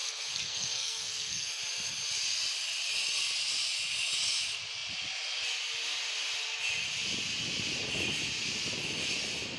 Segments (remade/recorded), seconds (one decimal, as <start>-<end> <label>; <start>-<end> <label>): 0.0-1.6 remade; 1.6-9.6 recorded

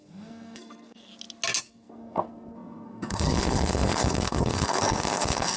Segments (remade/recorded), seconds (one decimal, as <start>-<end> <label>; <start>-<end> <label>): 0.0-1.1 remade; 1.1-1.6 recorded; 1.6-5.6 remade

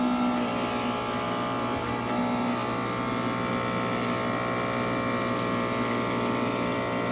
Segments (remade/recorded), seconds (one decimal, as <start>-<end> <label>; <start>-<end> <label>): 0.0-7.1 recorded

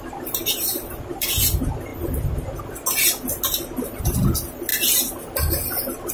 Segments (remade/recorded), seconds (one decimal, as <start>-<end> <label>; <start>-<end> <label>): 0.0-6.1 recorded

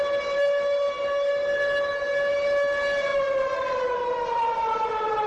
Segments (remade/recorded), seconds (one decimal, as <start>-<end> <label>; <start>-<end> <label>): 0.0-5.3 recorded

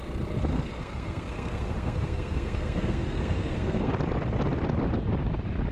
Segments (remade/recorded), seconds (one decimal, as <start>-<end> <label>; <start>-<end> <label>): 0.0-0.5 recorded; 0.5-3.9 remade; 3.9-5.7 recorded

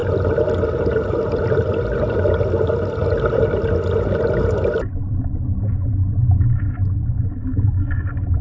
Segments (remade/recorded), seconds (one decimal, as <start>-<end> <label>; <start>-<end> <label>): 0.0-8.4 recorded

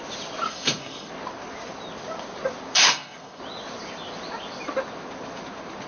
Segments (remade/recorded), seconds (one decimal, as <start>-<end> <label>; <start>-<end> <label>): 0.0-0.5 recorded; 0.5-1.1 remade; 1.1-2.9 recorded; 2.9-3.4 remade; 3.4-5.9 recorded